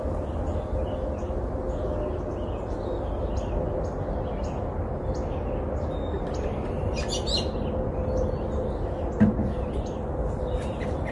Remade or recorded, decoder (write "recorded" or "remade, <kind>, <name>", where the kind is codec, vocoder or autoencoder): recorded